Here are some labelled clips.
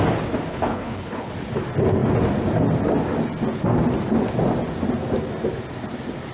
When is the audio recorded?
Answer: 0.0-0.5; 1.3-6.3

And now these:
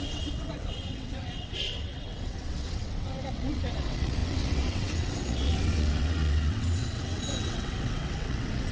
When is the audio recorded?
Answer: none

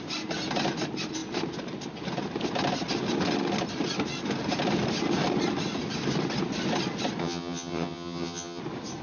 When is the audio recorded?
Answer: 0.0-7.2; 8.6-9.0

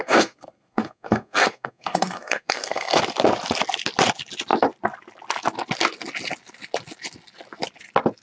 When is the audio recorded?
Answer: 3.0-8.2